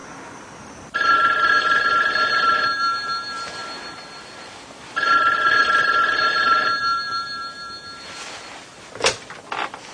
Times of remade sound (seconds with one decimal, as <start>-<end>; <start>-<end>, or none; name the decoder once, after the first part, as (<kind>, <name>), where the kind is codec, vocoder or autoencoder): none